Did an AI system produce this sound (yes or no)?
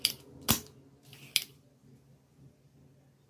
no